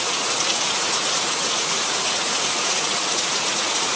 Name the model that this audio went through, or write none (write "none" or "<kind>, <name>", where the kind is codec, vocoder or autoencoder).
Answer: vocoder, Vocos